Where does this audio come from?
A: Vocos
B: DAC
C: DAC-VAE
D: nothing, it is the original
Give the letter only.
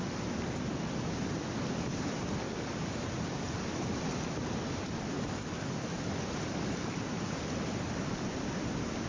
D